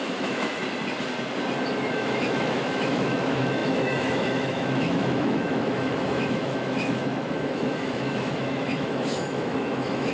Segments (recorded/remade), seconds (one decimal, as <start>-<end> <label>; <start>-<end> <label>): 0.0-0.6 remade; 0.6-1.9 recorded; 1.9-10.1 remade